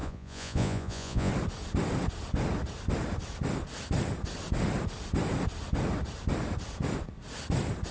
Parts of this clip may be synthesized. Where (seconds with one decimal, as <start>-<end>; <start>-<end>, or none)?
0.0-1.3

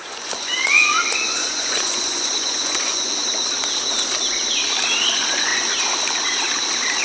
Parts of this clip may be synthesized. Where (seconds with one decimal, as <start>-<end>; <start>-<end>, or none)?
0.0-3.1; 5.1-5.5

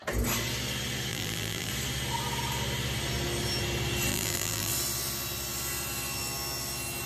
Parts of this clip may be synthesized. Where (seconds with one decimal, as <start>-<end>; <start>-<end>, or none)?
1.1-1.7; 4.1-4.7

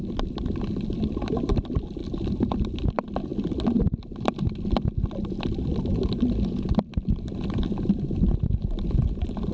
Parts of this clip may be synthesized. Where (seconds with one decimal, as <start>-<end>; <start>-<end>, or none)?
none

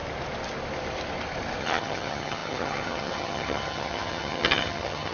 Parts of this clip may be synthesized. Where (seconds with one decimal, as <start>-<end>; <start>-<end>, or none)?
1.6-5.1

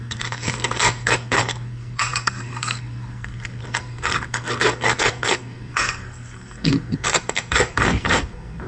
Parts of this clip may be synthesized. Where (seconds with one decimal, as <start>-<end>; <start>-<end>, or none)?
0.0-8.7